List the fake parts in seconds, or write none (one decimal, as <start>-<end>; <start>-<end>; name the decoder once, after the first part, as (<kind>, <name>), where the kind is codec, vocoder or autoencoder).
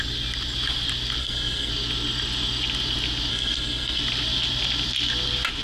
1.2-1.7 (codec, SNAC); 3.3-4.0